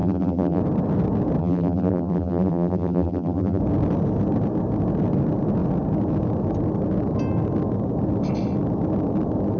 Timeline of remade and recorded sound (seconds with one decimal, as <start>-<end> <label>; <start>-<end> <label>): 0.0-0.6 remade; 0.6-1.4 recorded; 1.4-3.6 remade; 3.6-9.6 recorded